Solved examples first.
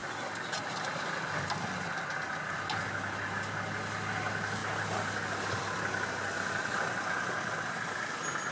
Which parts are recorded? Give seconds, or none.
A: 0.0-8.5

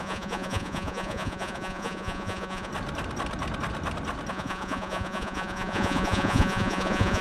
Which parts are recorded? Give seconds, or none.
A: 2.7-4.3

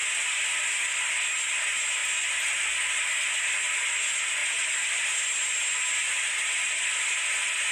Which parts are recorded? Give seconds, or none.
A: 0.0-7.7

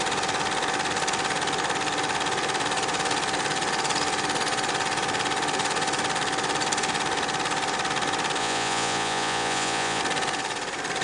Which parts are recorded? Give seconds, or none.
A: 0.0-8.4; 10.0-11.0